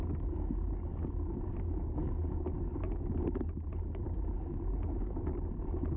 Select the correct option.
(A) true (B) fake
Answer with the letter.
A